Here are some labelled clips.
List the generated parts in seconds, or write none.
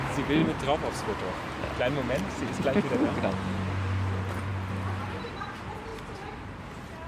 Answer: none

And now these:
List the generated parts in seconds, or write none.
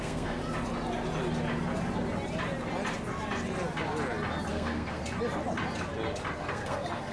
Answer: 0.0-0.4; 4.5-5.0; 6.5-7.1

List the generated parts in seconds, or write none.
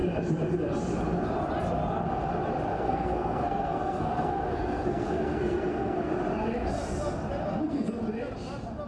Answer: 2.7-6.1; 7.5-8.0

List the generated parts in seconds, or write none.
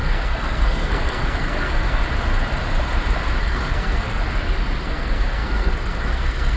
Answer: 0.0-2.0; 3.4-4.2; 4.8-6.6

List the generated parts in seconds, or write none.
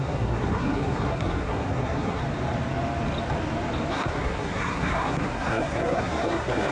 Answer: 0.0-2.2; 3.9-6.7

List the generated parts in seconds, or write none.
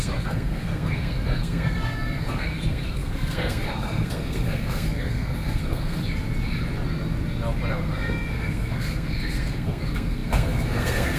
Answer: 0.0-6.0; 7.7-11.2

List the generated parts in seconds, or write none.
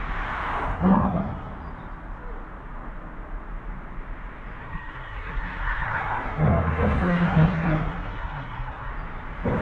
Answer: 0.7-1.5; 4.6-8.9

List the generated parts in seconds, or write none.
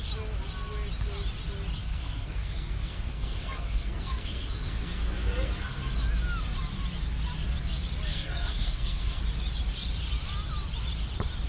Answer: 1.8-5.8; 8.1-9.2